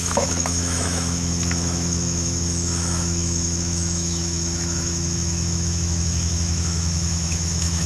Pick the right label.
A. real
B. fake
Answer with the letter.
B